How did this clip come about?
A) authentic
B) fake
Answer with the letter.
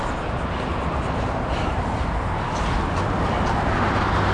A